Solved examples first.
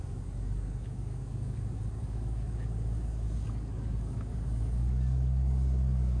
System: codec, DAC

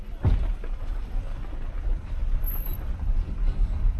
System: vocoder, BigVGAN v2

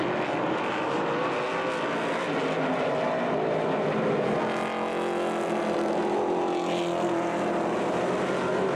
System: none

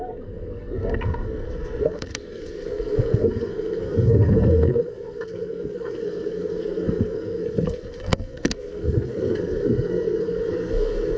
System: codec, SNAC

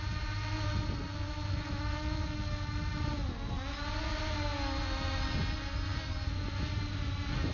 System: none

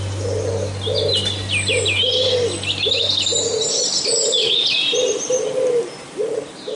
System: none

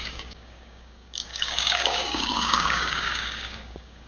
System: codec, DAC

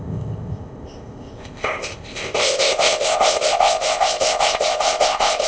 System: codec, ZipCodec